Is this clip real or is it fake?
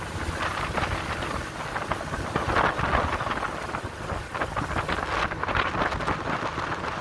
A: real